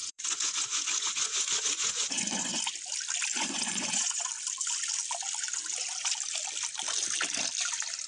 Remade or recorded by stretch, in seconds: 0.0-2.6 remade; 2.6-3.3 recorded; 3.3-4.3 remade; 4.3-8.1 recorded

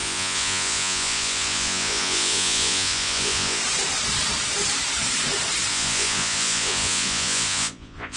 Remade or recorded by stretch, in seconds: 0.0-3.6 remade; 3.6-5.7 recorded; 5.7-8.2 remade

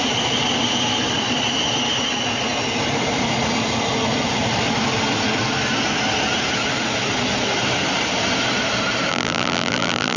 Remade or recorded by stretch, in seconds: 0.0-9.1 recorded; 9.1-10.2 remade

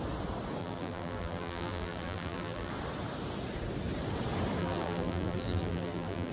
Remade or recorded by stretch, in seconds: 0.0-0.6 recorded; 0.6-2.7 remade; 2.7-4.6 recorded; 4.6-6.3 remade

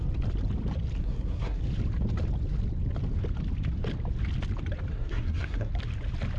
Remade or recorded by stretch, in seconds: 0.0-1.0 recorded; 1.0-1.6 remade; 1.6-4.9 recorded; 4.9-5.7 remade; 5.7-6.4 recorded